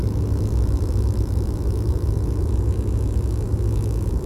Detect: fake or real fake